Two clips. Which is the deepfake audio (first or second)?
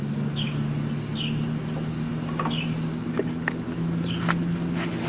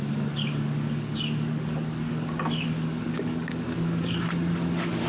second